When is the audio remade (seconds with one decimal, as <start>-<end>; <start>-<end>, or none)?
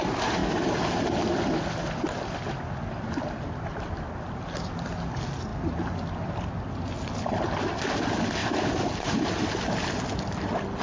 5.5-6.3; 8.4-9.1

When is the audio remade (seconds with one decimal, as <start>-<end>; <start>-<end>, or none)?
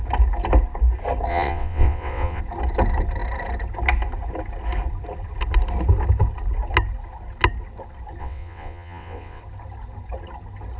1.3-2.4; 8.2-9.4